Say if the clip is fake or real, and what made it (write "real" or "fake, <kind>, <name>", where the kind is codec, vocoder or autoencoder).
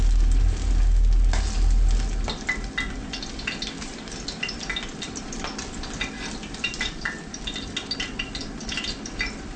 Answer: real